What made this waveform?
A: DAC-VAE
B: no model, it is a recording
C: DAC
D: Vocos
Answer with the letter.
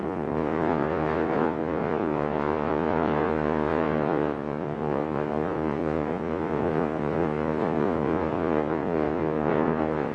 D